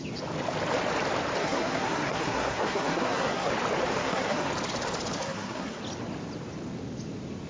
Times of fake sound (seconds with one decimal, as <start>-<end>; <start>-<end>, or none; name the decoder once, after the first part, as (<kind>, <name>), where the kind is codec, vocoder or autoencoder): 1.4-3.5 (codec, SNAC); 4.0-4.5; 5.2-5.8